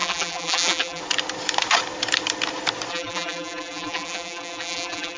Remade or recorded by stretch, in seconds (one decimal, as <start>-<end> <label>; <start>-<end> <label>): 0.0-1.0 remade; 1.0-2.9 recorded; 2.9-5.2 remade